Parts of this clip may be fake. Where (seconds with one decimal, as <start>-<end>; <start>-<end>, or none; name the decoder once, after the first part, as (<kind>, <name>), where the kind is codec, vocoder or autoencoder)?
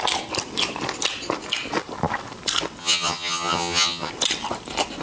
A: 2.8-4.1 (vocoder, HiFi-GAN)